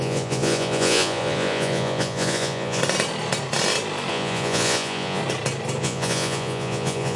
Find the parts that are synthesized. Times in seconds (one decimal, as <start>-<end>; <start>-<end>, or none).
0.0-2.8; 4.1-5.2; 5.8-7.2